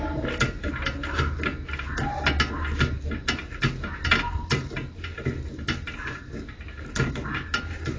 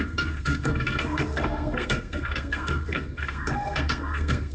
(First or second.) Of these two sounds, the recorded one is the first